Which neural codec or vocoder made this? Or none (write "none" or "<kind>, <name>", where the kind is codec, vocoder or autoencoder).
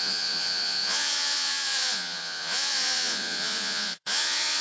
vocoder, Vocos